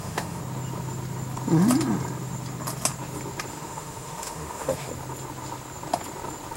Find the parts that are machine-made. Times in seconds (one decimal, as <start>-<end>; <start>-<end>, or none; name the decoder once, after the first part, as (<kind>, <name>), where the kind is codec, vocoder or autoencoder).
0.0-0.4 (autoencoder, DAC-VAE); 3.5-4.9